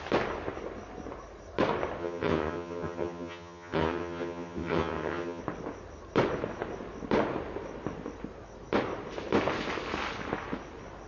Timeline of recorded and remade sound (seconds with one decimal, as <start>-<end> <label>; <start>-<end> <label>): 0.0-2.0 recorded; 2.0-5.4 remade; 5.4-11.1 recorded